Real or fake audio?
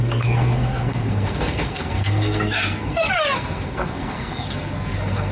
fake